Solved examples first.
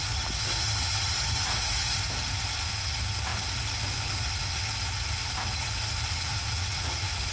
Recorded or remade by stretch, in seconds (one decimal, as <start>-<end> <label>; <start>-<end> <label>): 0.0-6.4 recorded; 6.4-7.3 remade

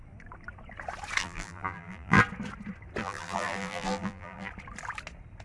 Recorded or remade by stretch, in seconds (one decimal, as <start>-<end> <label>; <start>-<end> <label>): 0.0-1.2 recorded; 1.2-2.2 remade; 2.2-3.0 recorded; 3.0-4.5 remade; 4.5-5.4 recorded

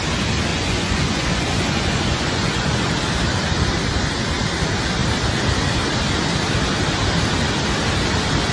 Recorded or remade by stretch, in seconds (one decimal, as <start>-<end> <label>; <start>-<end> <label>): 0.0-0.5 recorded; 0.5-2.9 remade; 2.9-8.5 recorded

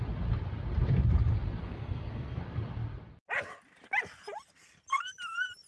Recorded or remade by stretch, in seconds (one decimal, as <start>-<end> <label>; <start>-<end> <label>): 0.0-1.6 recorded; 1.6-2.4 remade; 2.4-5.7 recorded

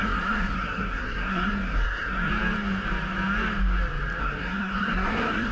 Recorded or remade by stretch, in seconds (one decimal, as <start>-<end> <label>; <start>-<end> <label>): 0.0-2.3 remade; 2.3-4.2 recorded; 4.2-5.5 remade

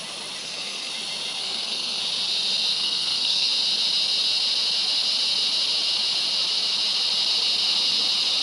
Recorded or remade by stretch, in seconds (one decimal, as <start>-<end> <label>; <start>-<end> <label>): 0.0-0.4 recorded; 0.4-0.9 remade; 0.9-1.4 recorded; 1.4-2.0 remade; 2.0-2.7 recorded; 2.7-3.5 remade; 3.5-8.4 recorded

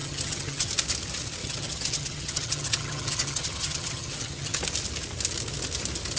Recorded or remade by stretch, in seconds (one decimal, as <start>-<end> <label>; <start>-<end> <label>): 0.0-0.7 remade; 0.7-1.4 recorded; 1.4-4.6 remade; 4.6-6.2 recorded

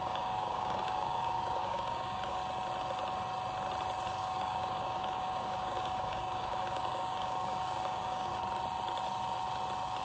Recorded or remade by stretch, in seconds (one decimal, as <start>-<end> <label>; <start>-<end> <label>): 0.0-2.4 remade; 2.4-4.2 recorded; 4.2-8.3 remade; 8.3-10.0 recorded